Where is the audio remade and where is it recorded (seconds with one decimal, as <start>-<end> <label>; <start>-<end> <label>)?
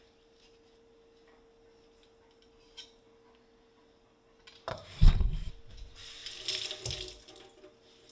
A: 0.0-4.7 recorded; 4.7-5.5 remade; 5.5-8.1 recorded